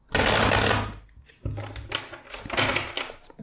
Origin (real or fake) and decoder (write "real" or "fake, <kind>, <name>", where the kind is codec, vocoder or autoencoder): real